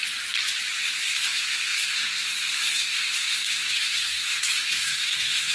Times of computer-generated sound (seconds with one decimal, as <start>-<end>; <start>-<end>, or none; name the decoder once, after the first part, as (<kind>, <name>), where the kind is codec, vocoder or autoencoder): 0.8-5.5 (codec, SNAC)